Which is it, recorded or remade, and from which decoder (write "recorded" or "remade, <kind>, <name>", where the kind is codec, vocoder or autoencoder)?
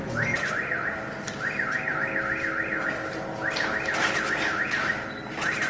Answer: recorded